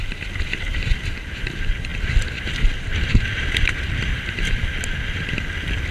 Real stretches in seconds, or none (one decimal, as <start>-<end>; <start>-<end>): 0.0-5.9

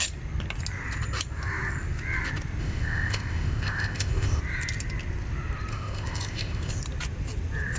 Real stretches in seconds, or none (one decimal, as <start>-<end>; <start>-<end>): 0.0-2.6; 4.4-5.7; 6.8-7.8

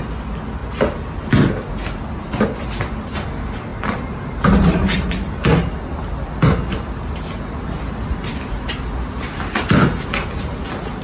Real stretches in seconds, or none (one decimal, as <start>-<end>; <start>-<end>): 0.0-11.0

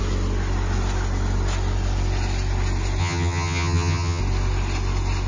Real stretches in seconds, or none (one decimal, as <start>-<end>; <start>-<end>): 0.0-3.0; 4.2-5.3

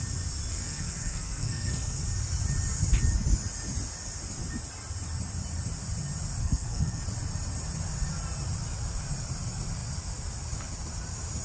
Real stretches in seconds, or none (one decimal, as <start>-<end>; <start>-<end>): 0.0-0.5; 2.0-6.4; 7.0-11.4